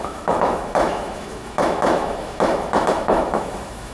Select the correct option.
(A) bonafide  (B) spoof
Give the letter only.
B